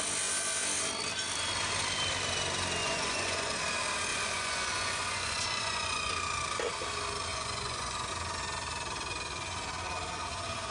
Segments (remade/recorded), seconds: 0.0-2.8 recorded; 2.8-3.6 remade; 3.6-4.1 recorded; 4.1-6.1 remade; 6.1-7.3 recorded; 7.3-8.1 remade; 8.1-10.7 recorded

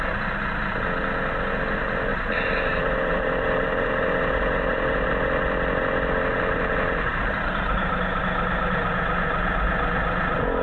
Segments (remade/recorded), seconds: 0.0-2.1 recorded; 2.1-5.1 remade; 5.1-7.1 recorded; 7.1-8.2 remade; 8.2-10.6 recorded

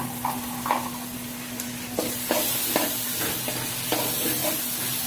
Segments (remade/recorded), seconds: 0.0-5.1 recorded

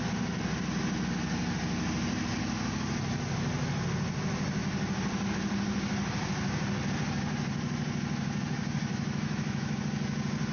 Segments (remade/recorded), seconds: 0.0-8.9 recorded; 8.9-9.8 remade; 9.8-10.5 recorded

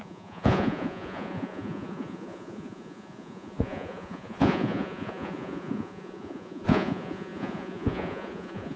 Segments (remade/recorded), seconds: 0.0-8.8 remade

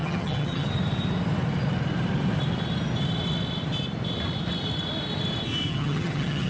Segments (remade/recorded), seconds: 0.0-0.7 remade; 0.7-5.7 recorded; 5.7-6.5 remade

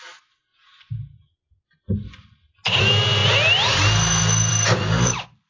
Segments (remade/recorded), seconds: 0.0-5.5 recorded

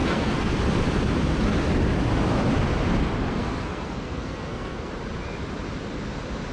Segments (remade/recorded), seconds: 0.0-0.6 remade; 0.6-3.3 recorded; 3.3-4.9 remade; 4.9-6.5 recorded